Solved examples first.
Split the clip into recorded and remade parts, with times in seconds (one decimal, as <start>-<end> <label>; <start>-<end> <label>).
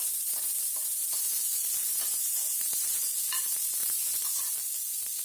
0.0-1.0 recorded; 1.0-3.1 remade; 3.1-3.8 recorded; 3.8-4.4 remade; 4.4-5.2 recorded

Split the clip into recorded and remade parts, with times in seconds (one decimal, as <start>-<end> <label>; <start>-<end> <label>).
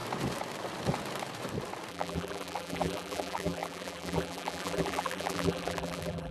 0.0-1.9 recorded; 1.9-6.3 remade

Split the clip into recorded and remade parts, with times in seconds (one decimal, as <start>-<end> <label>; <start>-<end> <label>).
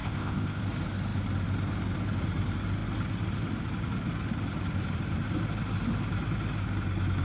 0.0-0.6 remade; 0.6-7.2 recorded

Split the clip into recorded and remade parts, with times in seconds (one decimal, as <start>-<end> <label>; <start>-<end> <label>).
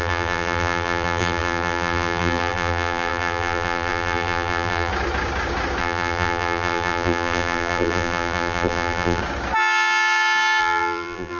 0.0-4.9 remade; 4.9-5.8 recorded; 5.8-9.2 remade; 9.2-10.6 recorded; 10.6-11.4 remade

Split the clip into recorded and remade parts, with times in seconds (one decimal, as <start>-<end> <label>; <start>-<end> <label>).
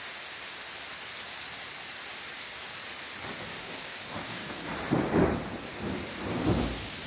0.0-3.6 recorded; 3.6-4.7 remade; 4.7-7.1 recorded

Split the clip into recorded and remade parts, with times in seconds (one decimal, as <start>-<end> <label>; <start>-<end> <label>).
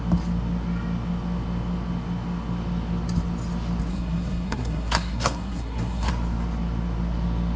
0.0-3.9 recorded; 3.9-6.1 remade; 6.1-7.6 recorded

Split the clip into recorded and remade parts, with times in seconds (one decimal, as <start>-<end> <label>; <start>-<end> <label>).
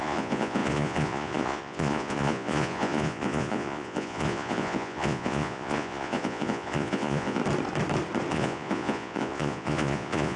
0.0-7.4 remade; 7.4-8.3 recorded; 8.3-10.4 remade